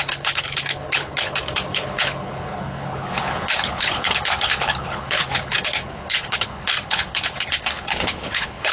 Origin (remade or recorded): remade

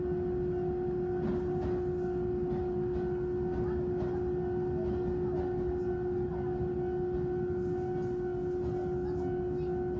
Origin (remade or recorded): recorded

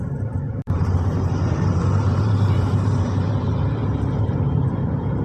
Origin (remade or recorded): remade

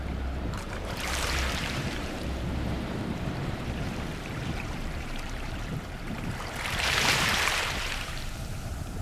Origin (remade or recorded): remade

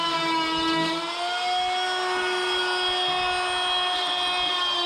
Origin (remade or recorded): recorded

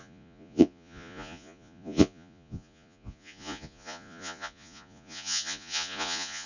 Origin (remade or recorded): remade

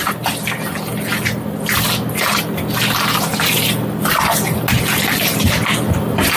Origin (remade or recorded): recorded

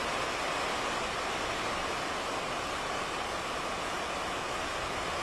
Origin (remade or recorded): recorded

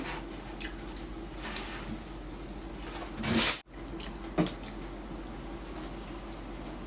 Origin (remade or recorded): recorded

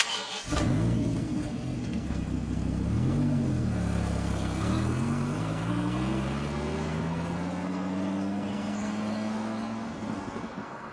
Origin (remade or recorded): remade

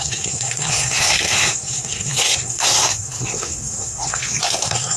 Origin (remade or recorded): remade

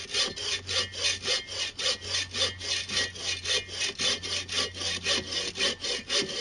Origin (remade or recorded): recorded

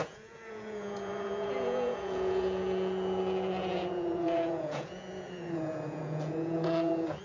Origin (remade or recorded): remade